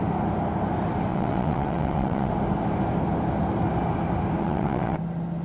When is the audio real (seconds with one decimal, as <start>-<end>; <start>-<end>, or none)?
0.0-1.1; 2.3-4.4; 5.0-5.4